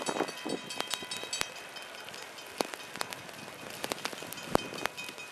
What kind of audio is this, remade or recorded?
recorded